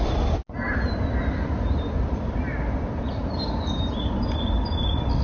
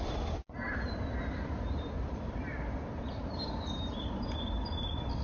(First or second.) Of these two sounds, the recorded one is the first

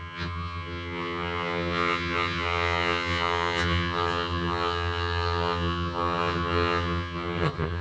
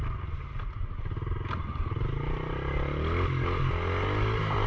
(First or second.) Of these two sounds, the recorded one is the second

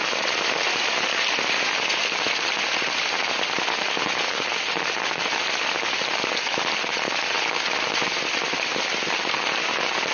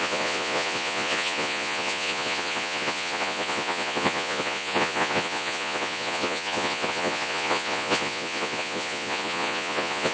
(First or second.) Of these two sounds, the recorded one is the first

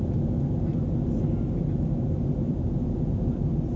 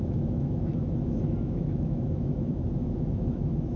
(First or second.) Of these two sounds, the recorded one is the first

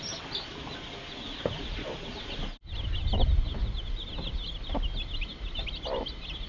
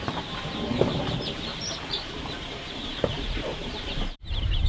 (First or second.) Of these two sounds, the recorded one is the first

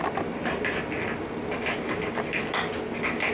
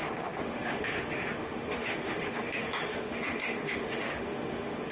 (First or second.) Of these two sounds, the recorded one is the first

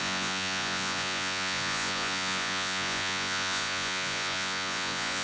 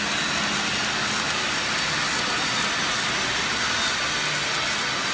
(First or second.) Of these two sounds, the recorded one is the second